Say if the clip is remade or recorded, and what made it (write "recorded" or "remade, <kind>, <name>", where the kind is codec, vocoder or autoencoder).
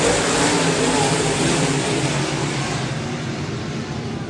remade, vocoder, BigVGAN v2